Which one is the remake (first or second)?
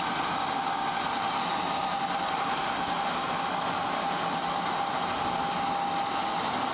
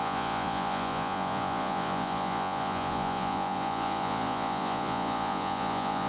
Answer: second